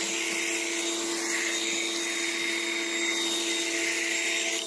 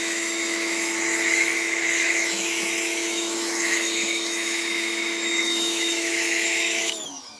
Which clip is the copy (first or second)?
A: second